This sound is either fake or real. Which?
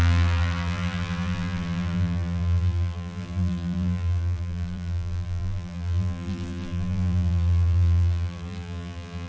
fake